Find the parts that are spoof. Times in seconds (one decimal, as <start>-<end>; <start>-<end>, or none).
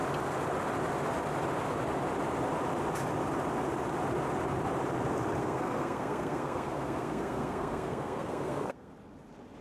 5.4-8.9